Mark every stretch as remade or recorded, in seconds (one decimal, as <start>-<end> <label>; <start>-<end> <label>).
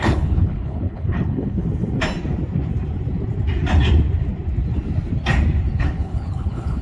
0.0-1.6 remade; 1.6-5.7 recorded; 5.7-6.8 remade